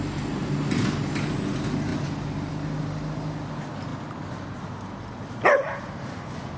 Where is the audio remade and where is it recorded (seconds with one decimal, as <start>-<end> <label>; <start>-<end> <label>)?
0.0-6.6 recorded